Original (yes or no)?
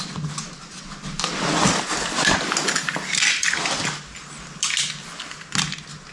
yes